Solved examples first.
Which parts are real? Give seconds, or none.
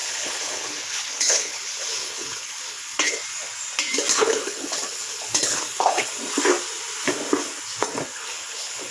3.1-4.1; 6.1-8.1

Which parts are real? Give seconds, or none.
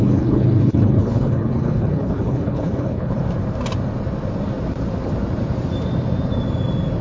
3.2-7.0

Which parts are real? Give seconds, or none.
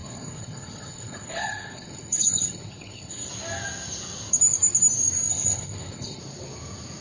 3.3-5.3; 6.2-7.0